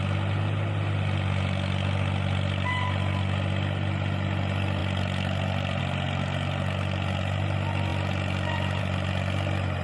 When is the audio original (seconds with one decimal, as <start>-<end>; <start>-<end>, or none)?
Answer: 0.0-9.8